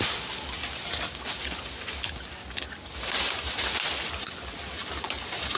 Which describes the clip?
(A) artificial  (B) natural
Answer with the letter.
B